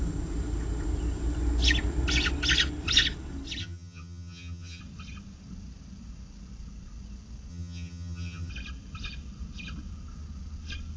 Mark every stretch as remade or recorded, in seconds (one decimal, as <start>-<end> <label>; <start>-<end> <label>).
0.0-3.6 recorded; 3.6-4.8 remade; 4.8-7.5 recorded; 7.5-8.5 remade; 8.5-11.0 recorded